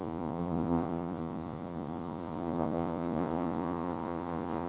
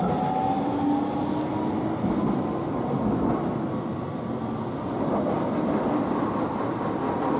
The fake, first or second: first